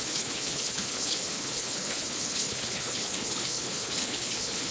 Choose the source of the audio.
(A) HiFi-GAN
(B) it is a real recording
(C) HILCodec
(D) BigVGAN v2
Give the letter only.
C